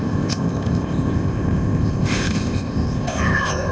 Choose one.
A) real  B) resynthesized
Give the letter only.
B